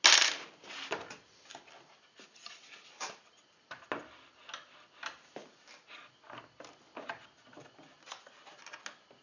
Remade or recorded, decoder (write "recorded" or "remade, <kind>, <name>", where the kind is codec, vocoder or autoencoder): recorded